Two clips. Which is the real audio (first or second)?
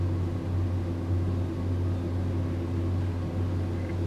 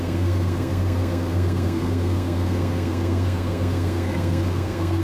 first